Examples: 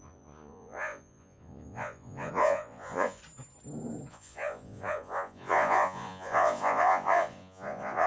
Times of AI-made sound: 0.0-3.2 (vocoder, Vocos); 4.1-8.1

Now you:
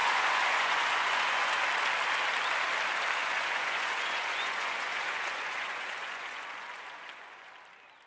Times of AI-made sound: 0.0-1.6 (vocoder, Vocos); 3.2-7.5

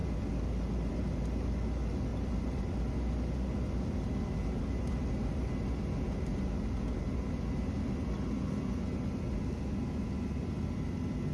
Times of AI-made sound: none